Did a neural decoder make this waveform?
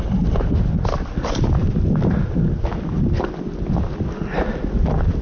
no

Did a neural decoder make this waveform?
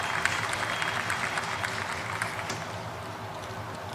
no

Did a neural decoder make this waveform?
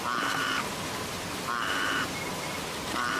no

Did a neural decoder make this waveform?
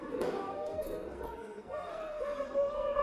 yes